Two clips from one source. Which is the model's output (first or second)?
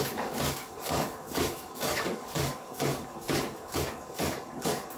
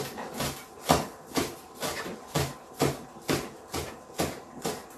first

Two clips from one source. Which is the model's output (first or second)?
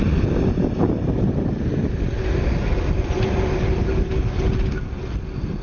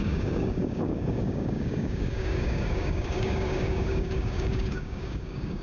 second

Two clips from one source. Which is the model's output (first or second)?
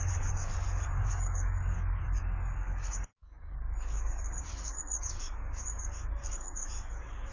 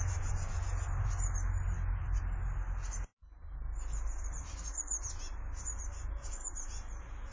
first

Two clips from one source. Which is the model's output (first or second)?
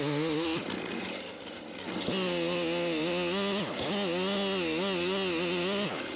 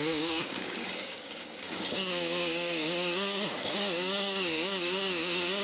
second